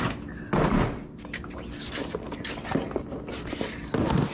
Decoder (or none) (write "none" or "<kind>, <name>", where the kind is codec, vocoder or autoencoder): none